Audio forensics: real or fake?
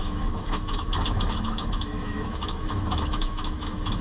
fake